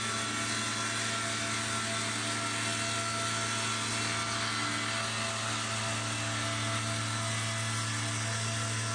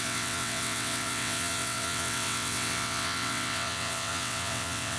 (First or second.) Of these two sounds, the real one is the first